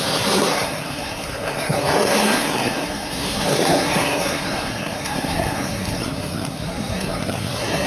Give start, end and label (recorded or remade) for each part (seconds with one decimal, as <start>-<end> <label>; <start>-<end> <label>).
0.0-7.9 remade